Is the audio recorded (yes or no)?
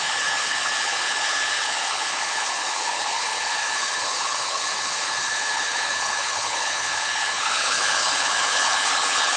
no